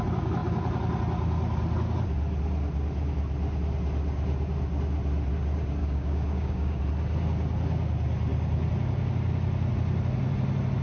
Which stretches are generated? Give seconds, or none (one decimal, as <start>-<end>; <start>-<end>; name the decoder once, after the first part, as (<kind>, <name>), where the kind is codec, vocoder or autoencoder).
5.8-6.8 (codec, DAC)